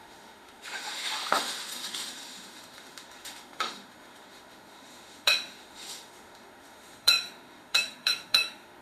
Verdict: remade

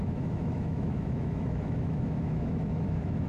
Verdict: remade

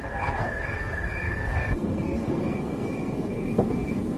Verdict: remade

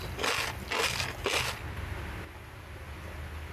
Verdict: recorded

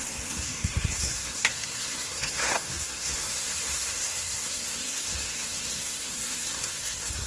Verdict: remade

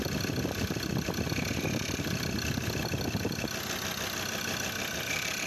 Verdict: recorded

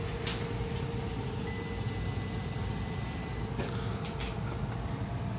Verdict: recorded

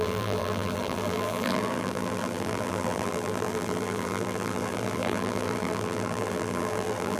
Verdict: remade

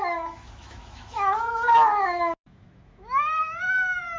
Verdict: remade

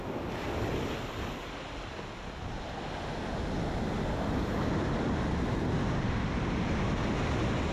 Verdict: recorded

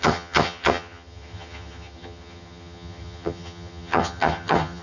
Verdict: remade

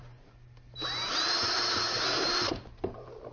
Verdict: remade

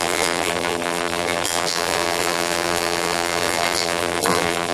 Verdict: remade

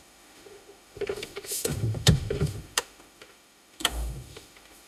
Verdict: remade